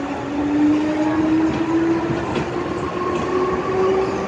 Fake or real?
real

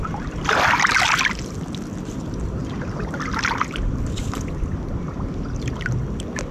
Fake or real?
real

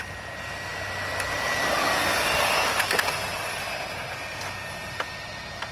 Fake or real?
real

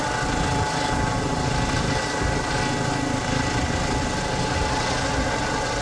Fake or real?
real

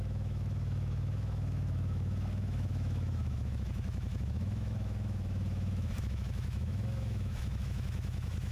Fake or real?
fake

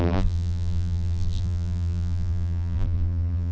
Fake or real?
fake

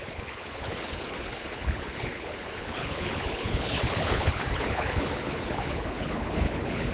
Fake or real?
fake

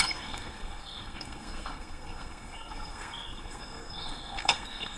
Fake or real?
fake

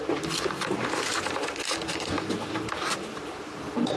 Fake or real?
real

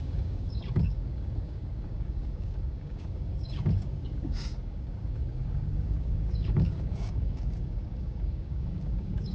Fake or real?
fake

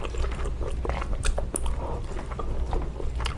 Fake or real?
real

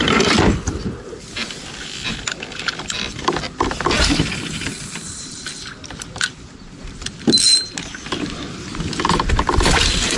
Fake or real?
fake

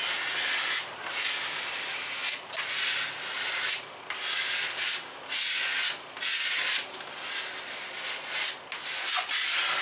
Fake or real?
real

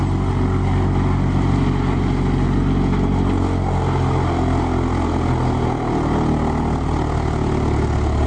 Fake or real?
real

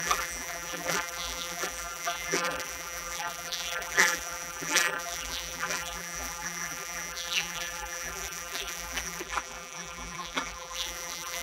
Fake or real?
fake